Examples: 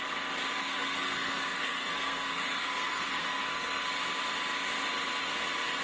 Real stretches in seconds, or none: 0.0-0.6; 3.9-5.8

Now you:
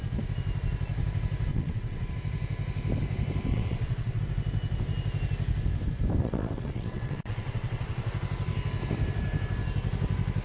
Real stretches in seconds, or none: 0.0-1.5; 2.1-3.5; 4.2-6.2; 8.1-10.4

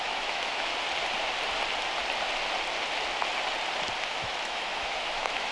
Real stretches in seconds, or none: 0.7-4.0

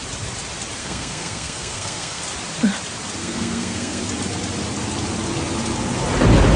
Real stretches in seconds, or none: 0.0-0.8; 2.2-3.2; 4.0-6.6